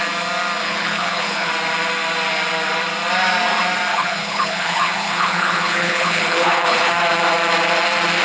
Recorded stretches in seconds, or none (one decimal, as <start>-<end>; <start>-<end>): 0.0-0.6; 1.5-3.9; 6.9-8.2